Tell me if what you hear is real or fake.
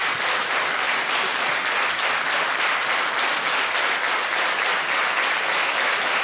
real